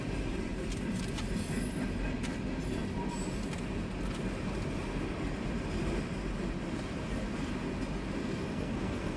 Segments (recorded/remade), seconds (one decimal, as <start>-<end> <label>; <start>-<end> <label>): 0.0-8.2 recorded; 8.2-9.2 remade